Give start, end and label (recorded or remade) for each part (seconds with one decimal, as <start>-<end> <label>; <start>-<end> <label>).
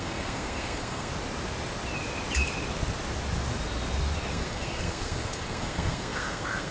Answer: 0.0-1.1 remade; 1.1-4.3 recorded; 4.3-6.7 remade